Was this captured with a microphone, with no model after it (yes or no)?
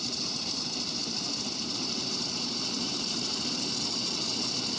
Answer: no